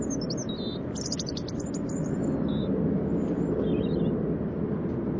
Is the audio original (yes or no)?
yes